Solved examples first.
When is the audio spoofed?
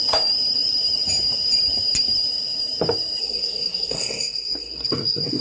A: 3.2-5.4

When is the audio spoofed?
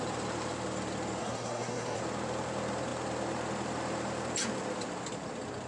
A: 1.2-2.0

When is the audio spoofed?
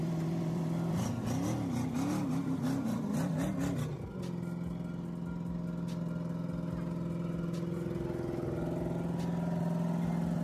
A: 0.0-0.9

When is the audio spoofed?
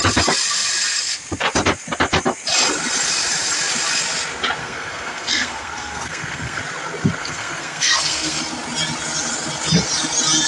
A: 4.6-6.6; 7.2-8.4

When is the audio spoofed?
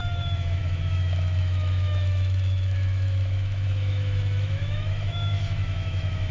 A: 0.0-6.3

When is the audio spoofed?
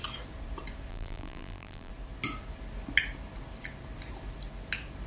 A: 0.9-1.9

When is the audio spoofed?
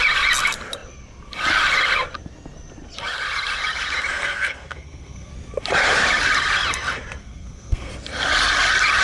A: 4.1-5.3; 7.2-7.9